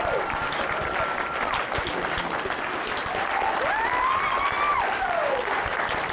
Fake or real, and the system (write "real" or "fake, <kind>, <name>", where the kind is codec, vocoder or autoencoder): real